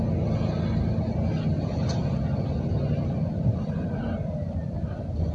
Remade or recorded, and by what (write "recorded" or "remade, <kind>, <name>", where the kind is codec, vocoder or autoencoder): recorded